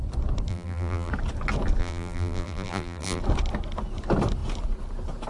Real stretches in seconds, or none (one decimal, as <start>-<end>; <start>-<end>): 0.0-0.5; 1.1-1.8; 3.2-5.3